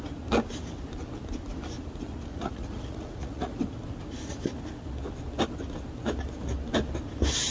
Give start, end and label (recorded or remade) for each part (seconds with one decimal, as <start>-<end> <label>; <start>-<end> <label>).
0.0-2.3 recorded; 2.3-3.6 remade; 3.6-7.5 recorded